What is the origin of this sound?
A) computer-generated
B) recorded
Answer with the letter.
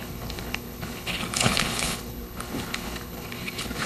A